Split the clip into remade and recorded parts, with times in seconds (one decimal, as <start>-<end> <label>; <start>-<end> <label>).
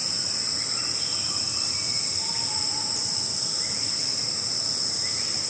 0.0-5.5 recorded